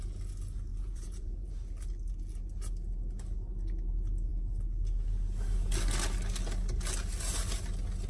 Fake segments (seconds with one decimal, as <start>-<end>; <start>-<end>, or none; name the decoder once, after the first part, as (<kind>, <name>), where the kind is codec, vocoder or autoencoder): 0.7-1.5 (vocoder, Vocos)